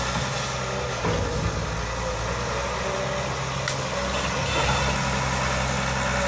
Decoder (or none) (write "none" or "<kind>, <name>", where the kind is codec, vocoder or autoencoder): none